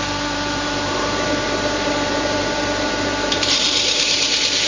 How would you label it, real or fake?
fake